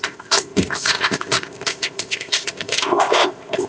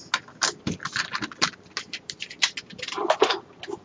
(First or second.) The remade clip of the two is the first